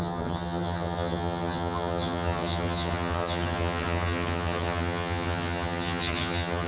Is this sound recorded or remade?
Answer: remade